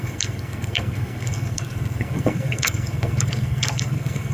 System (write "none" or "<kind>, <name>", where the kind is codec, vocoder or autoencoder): codec, SNAC